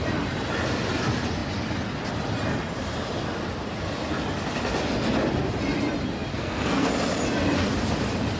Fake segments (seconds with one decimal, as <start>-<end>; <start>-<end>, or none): 6.3-6.9